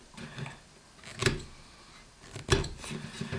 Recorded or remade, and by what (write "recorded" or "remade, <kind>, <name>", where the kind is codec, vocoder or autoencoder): recorded